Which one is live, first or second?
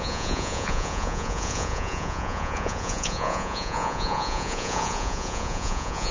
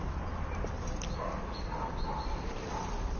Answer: second